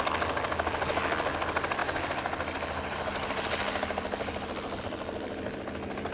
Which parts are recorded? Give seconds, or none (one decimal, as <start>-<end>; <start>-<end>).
0.0-6.1